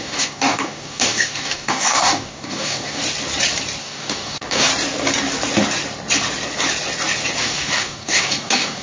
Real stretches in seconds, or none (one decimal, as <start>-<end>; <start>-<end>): 3.0-3.8; 4.7-7.4